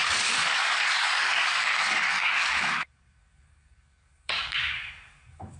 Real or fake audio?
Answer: fake